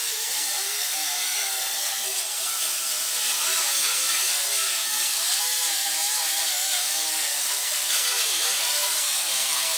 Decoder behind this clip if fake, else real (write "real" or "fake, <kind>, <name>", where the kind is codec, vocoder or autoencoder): fake, codec, SNAC